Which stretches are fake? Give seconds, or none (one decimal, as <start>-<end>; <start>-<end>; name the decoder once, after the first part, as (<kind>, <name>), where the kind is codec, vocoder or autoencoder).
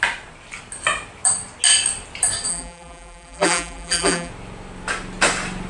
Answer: 2.5-4.3 (vocoder, BigVGAN v2)